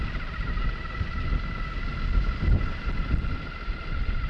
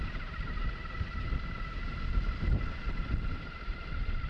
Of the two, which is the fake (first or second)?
second